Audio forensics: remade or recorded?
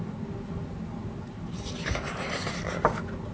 recorded